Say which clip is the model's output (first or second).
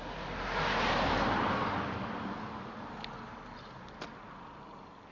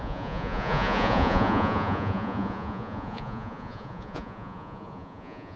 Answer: second